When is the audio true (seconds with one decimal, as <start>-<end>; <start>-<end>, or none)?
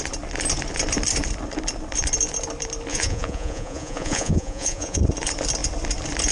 0.0-2.9; 5.0-6.3